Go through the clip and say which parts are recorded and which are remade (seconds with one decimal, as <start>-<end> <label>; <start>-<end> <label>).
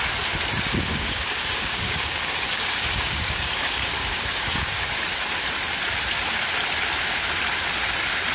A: 0.0-0.9 recorded; 0.9-5.0 remade; 5.0-8.3 recorded